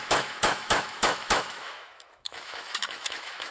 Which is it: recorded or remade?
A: remade